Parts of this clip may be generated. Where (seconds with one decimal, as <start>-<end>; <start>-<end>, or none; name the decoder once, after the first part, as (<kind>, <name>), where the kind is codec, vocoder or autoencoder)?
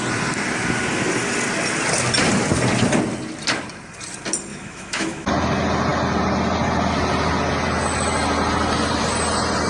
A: 4.5-5.3 (autoencoder, DAC-VAE)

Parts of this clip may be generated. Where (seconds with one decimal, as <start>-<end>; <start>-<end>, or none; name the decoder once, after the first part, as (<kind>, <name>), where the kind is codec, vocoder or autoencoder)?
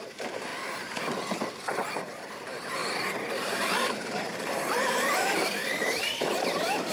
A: 0.0-0.5 (vocoder, BigVGAN v2); 2.0-2.8; 3.4-6.9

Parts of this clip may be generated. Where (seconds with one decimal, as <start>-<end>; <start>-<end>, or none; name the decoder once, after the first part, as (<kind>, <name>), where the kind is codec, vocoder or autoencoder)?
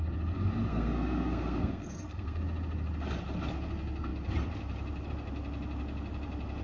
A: 0.7-2.4 (codec, SNAC)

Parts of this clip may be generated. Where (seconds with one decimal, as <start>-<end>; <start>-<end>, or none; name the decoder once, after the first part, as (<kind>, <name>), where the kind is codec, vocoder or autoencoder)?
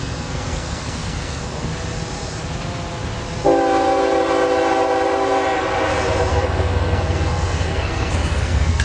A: 0.0-1.7 (codec, SNAC); 6.3-8.8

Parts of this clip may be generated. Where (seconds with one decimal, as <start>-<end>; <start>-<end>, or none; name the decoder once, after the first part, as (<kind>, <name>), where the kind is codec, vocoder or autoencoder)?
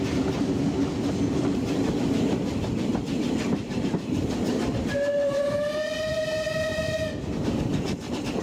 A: none